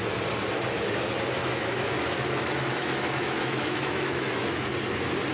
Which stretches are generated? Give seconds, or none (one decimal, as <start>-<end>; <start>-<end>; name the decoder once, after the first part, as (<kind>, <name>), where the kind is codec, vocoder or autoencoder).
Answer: 1.4-4.6 (autoencoder, DAC-VAE)